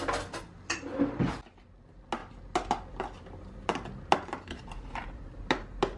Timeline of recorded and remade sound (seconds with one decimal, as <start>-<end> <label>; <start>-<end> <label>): 0.0-6.0 recorded